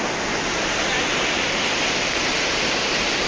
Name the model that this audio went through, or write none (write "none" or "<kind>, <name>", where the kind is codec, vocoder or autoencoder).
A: none